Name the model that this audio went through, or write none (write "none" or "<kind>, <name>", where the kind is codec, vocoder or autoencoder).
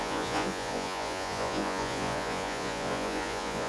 vocoder, Vocos